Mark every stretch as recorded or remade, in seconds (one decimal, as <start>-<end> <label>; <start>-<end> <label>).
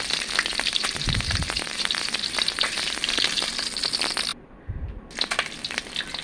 0.0-0.5 recorded; 0.5-3.6 remade; 3.6-4.3 recorded; 4.3-4.8 remade; 4.8-6.2 recorded